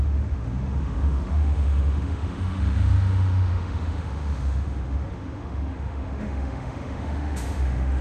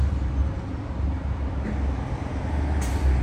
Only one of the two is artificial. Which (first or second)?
first